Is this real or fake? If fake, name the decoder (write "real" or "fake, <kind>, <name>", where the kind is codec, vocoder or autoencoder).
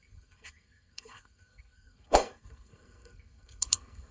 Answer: fake, codec, SNAC